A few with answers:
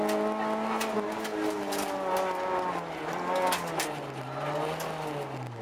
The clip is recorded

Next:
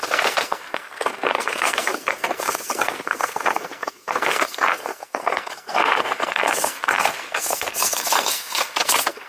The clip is remade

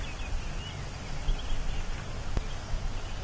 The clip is recorded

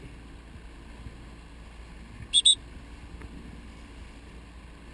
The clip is recorded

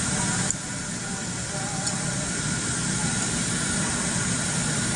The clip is recorded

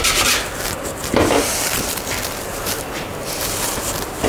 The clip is recorded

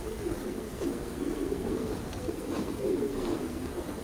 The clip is remade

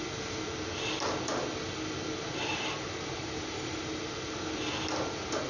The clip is recorded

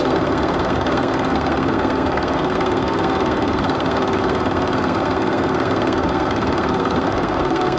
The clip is remade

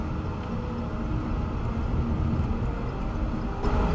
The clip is recorded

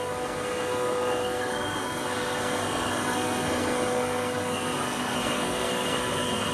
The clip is remade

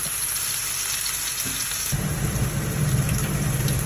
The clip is recorded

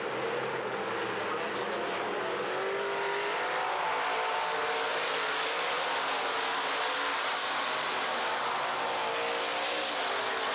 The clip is recorded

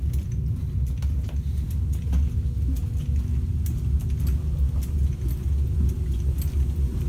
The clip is recorded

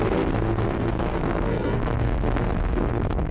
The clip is remade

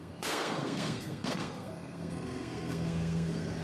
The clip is remade